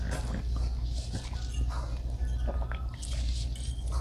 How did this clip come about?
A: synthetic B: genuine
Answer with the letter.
B